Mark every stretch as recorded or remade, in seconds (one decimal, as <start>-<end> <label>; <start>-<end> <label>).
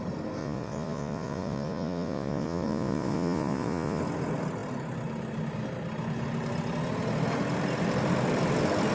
0.0-0.4 recorded; 0.4-4.0 remade; 4.0-8.9 recorded